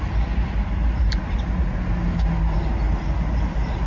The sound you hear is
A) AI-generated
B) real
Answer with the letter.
B